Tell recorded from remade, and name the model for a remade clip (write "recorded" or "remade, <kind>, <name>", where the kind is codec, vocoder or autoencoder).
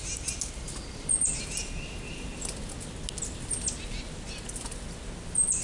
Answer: recorded